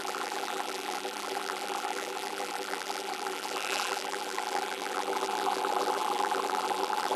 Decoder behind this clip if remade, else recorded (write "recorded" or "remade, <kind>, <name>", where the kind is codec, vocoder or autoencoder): remade, vocoder, BigVGAN v2